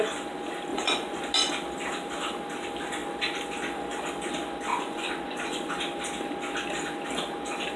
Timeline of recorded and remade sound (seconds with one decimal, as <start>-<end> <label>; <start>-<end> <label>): 0.0-0.7 recorded; 0.7-1.2 remade; 1.2-4.7 recorded; 4.7-5.7 remade; 5.7-7.8 recorded